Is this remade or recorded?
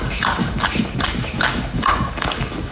remade